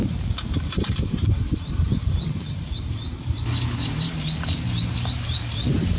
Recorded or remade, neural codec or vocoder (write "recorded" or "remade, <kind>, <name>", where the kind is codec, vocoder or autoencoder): remade, vocoder, BigVGAN v2